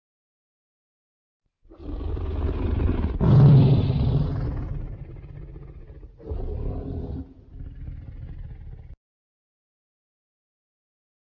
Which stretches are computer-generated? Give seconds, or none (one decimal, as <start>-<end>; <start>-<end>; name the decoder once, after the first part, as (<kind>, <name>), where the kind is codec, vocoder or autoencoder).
5.6-6.3 (vocoder, BigVGAN v2)